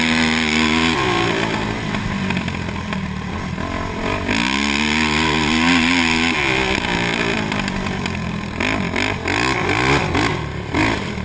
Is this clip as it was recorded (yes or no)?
yes